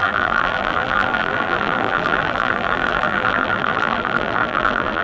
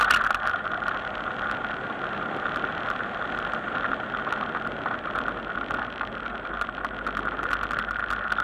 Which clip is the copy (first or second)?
first